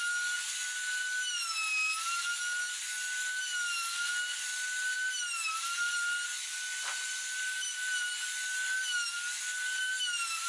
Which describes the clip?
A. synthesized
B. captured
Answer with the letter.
B